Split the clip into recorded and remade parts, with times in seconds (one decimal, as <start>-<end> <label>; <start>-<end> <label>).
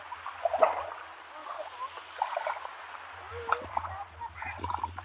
0.0-5.0 recorded